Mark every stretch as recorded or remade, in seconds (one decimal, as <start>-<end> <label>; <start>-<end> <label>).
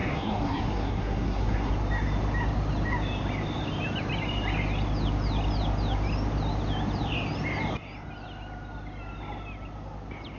0.0-1.7 remade; 1.7-10.4 recorded